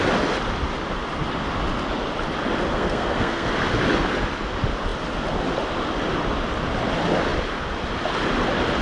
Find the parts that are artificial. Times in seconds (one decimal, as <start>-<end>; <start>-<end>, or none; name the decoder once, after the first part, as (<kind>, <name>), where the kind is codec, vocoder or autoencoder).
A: 2.7-3.5 (codec, SNAC)